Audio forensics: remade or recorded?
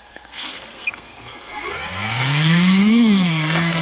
remade